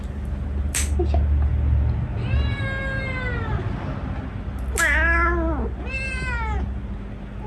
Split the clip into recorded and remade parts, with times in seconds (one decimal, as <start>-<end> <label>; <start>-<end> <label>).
0.0-7.5 recorded